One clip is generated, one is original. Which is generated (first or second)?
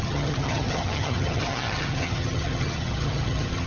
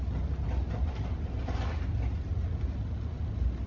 first